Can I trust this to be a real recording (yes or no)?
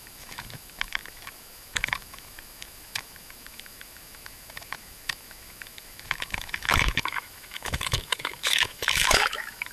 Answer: no